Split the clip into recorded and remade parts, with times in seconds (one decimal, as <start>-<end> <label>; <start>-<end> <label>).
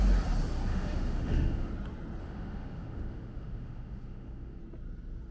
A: 0.0-0.7 recorded; 0.7-1.7 remade; 1.7-2.2 recorded; 2.2-4.6 remade; 4.6-5.3 recorded